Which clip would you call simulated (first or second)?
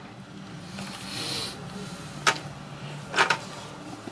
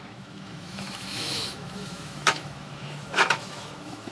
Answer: second